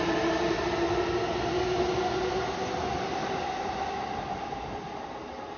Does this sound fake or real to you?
real